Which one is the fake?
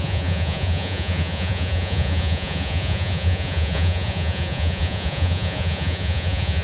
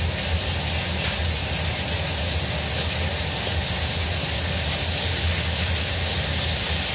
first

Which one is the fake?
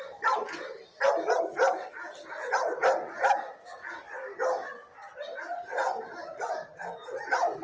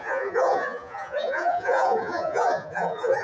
second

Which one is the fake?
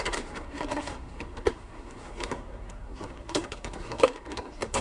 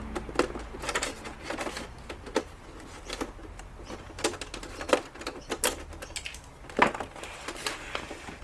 first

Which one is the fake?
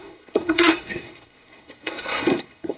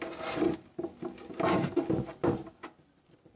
first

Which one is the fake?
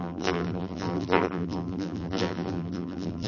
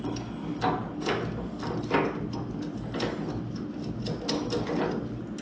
first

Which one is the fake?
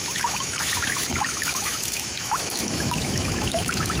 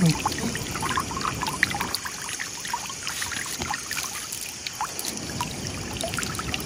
first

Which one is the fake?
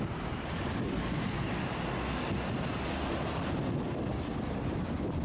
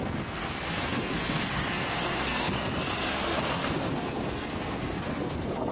second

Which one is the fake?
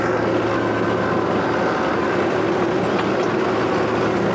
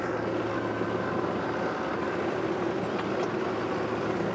second